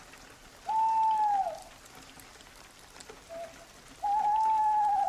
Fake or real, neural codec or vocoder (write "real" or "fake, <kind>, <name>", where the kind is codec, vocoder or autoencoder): real